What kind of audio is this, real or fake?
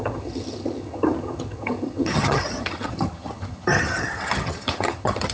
fake